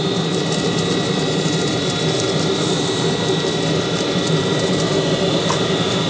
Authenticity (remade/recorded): recorded